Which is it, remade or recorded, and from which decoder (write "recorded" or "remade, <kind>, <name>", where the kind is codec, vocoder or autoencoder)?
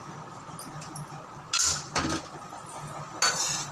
recorded